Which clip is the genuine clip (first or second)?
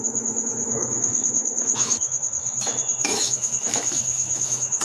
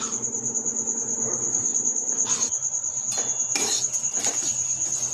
second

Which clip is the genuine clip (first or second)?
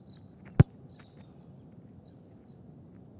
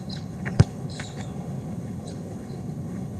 first